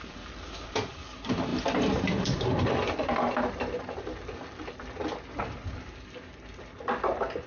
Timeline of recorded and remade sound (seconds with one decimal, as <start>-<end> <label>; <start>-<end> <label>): 0.0-1.5 recorded; 1.5-5.4 remade; 5.4-7.5 recorded